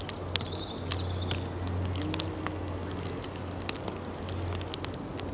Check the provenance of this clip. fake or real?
real